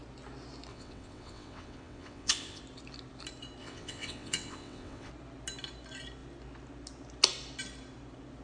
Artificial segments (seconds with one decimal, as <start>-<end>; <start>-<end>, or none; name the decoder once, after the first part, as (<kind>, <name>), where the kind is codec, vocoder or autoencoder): 0.7-2.6 (vocoder, WaveNeXt); 3.6-5.1